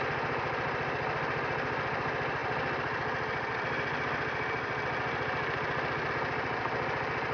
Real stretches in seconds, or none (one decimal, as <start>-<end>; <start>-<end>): 0.0-7.3